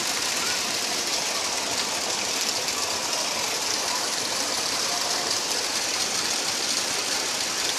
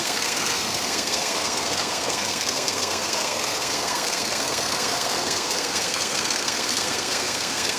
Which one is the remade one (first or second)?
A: second